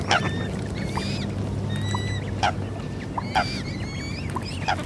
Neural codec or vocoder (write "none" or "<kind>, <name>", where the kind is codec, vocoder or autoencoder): none